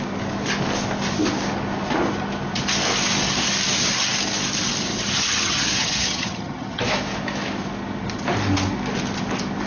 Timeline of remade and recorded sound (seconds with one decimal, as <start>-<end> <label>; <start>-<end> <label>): 0.0-4.9 recorded; 4.9-6.8 remade; 6.8-9.7 recorded